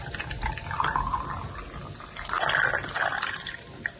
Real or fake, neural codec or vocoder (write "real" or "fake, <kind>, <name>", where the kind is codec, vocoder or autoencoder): real